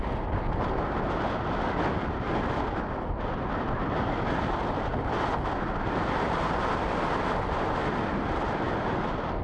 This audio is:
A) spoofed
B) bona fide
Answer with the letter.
B